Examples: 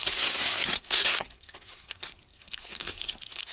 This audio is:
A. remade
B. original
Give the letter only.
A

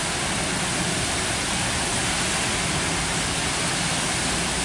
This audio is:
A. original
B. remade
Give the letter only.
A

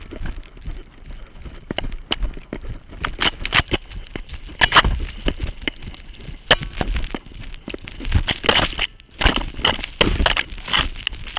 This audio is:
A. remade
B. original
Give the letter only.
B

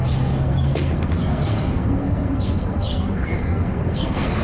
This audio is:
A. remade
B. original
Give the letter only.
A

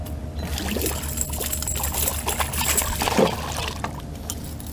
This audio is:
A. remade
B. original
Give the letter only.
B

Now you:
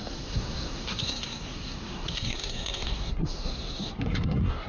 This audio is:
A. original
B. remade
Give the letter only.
B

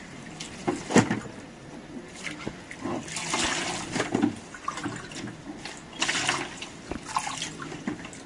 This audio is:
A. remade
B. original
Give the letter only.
B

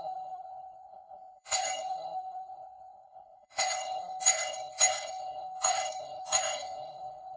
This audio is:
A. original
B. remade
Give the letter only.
B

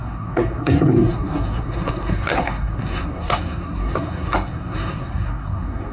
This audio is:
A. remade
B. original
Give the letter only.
A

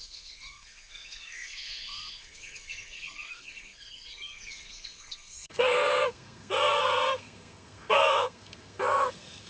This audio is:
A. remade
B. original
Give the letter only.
A